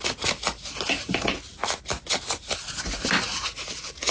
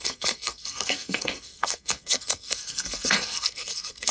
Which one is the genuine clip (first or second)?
first